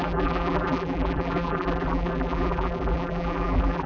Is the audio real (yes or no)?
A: no